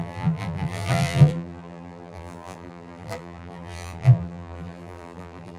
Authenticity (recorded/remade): remade